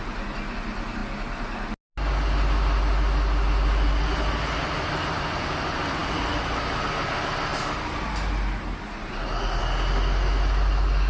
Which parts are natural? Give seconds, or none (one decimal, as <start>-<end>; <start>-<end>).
0.0-11.1